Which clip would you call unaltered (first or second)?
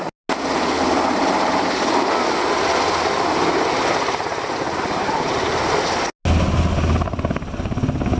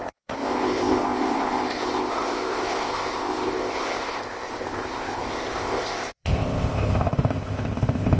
first